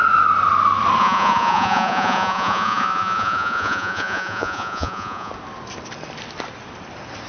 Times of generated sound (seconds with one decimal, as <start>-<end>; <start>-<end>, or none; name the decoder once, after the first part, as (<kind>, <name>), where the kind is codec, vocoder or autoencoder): 1.0-5.3 (vocoder, Vocos)